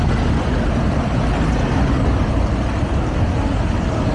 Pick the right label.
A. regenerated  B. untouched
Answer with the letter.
B